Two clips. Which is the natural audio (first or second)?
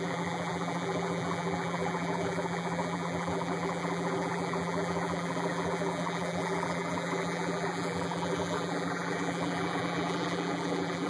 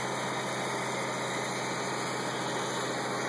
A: second